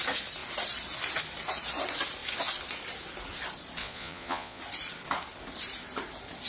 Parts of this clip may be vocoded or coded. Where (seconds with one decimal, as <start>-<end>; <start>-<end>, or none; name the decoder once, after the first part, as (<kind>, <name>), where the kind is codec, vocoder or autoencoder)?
3.8-4.6 (vocoder, Vocos)

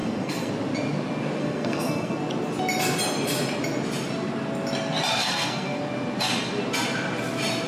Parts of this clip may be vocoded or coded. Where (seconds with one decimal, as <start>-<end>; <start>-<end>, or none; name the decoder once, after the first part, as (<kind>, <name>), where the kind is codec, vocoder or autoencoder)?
0.0-0.5 (codec, SNAC); 1.4-2.2; 5.1-5.8

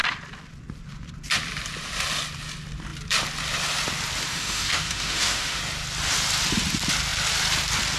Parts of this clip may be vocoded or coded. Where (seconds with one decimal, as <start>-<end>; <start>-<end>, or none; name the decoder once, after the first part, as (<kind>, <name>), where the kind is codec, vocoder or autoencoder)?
4.3-5.6 (autoencoder, DAC-VAE)

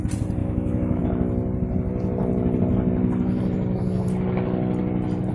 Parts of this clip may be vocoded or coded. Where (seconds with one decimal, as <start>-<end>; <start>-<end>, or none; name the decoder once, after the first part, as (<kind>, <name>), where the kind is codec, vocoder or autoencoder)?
0.4-1.0 (autoencoder, DAC-VAE)

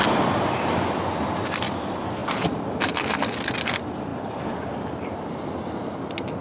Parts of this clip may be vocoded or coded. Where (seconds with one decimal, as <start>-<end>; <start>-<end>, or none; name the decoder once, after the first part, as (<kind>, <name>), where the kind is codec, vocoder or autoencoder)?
none

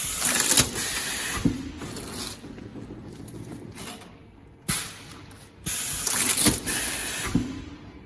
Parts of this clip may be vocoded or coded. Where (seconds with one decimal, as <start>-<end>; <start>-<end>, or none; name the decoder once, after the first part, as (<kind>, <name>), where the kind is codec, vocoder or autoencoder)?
none

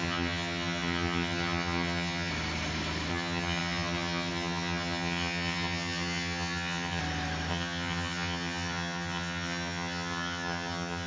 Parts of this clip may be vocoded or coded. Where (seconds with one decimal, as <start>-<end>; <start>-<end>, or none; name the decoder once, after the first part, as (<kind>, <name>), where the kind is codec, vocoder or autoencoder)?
0.0-2.3 (vocoder, HiFi-GAN); 3.1-7.0; 7.5-11.1